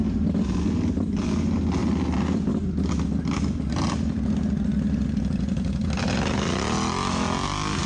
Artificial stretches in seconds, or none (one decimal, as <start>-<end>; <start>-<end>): 1.8-2.5